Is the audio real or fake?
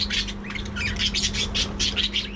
real